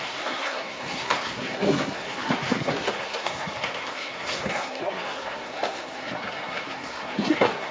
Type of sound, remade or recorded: remade